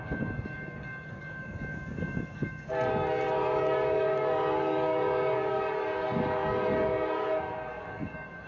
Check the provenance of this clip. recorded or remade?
remade